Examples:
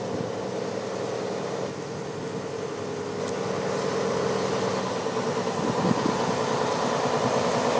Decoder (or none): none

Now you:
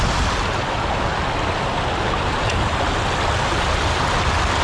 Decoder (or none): none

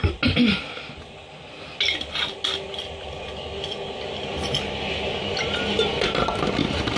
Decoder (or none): none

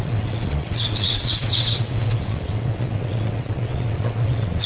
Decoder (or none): vocoder, WaveNeXt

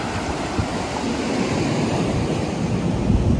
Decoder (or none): none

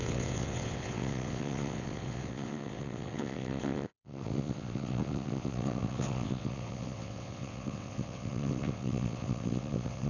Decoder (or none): vocoder, WaveNeXt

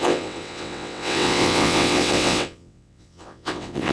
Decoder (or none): vocoder, WaveNeXt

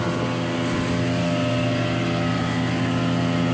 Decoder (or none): none